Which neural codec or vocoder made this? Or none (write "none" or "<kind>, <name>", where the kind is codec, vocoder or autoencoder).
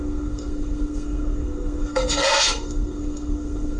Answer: codec, SNAC